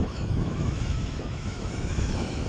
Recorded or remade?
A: remade